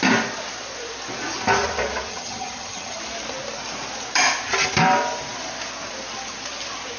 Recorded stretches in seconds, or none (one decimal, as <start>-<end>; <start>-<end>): 0.0-2.1; 3.0-7.0